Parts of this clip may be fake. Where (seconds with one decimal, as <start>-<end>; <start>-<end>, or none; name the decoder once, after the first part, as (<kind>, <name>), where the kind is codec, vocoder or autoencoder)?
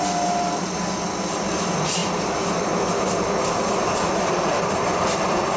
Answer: none